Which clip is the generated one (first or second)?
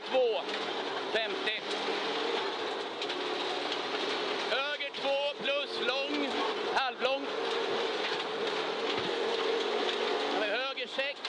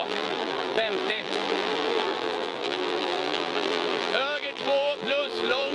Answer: second